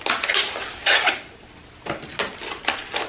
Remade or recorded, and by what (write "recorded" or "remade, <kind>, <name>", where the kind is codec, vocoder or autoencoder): recorded